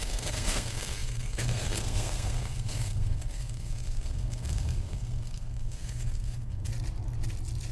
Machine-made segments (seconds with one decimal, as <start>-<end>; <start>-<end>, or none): 0.0-6.7

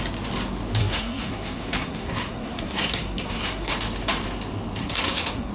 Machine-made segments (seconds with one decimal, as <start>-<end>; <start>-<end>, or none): 0.8-3.7; 4.8-5.5

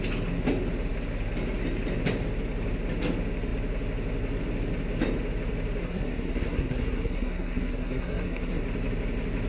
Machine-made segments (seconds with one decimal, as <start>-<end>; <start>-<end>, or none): 5.8-8.6

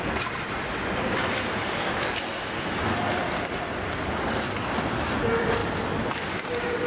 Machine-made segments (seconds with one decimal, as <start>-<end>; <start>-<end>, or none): none

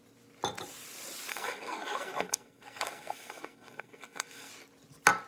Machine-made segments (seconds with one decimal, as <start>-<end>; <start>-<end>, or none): 1.3-4.5